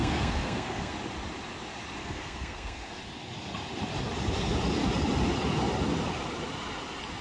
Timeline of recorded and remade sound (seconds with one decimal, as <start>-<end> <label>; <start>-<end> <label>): 0.0-0.9 remade; 0.9-2.0 recorded; 2.0-3.0 remade; 3.0-7.2 recorded